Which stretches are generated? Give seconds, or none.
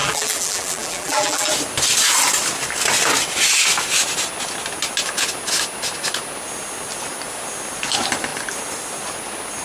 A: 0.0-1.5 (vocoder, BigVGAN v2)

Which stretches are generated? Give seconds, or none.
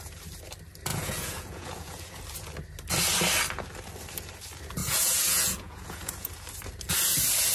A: 0.9-2.2 (vocoder, Vocos); 4.8-6.3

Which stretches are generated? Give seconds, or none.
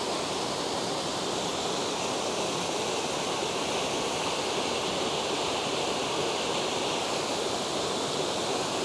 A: none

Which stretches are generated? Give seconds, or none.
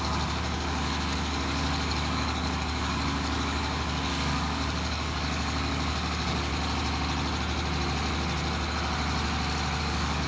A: 0.0-6.5 (codec, DAC); 9.8-10.3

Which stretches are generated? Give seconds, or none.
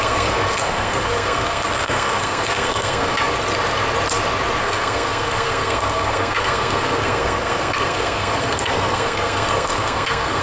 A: 0.0-3.3 (codec, SNAC); 4.6-10.4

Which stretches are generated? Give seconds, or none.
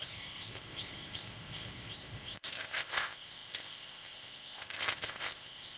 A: 0.0-5.8 (codec, ZipCodec)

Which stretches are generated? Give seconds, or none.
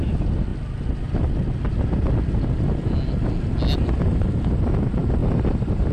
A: 5.2-5.9 (vocoder, BigVGAN v2)